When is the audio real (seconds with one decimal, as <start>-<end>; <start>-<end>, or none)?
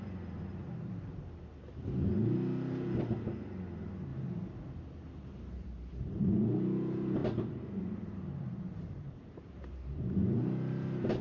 0.0-0.6; 1.3-4.1; 6.3-7.2; 9.2-11.2